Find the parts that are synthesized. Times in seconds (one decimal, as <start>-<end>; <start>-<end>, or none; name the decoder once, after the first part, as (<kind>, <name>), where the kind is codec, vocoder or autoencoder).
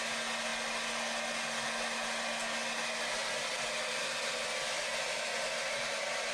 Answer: none